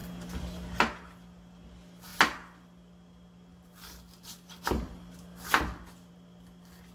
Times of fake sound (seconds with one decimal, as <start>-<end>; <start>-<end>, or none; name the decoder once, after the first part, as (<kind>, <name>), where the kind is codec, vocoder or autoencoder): none